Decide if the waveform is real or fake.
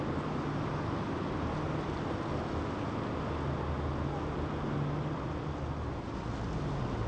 real